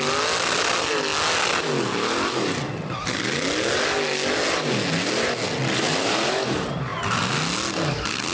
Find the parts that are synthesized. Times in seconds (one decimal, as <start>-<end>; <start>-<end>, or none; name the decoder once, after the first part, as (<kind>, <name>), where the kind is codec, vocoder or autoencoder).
none